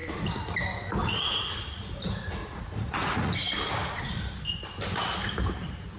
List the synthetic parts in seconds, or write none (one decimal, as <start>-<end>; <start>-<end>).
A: 1.0-3.3